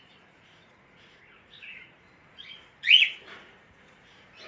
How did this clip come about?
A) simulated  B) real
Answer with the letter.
A